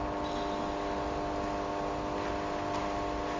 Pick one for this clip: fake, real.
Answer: real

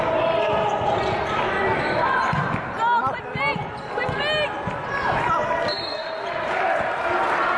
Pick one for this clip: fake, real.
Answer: real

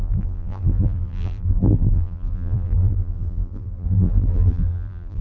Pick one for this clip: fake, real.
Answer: fake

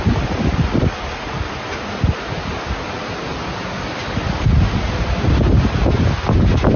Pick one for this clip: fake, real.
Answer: real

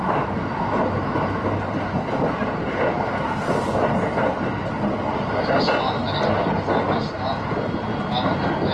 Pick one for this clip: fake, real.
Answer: real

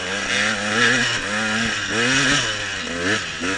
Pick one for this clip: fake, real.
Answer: real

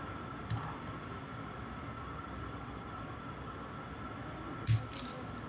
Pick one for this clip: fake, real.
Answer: real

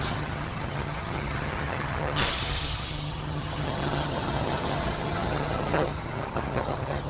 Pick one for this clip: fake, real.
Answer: fake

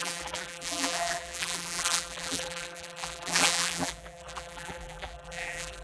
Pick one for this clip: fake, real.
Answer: fake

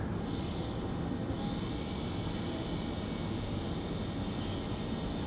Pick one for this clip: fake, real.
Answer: real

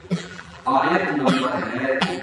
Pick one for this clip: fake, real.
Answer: fake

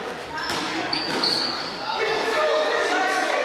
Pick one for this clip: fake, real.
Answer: fake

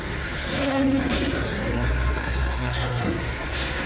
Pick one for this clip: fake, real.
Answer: fake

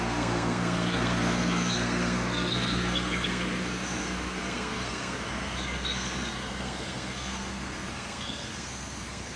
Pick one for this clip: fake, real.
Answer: fake